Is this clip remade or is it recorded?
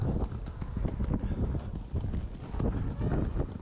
recorded